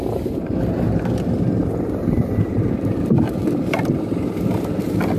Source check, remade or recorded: recorded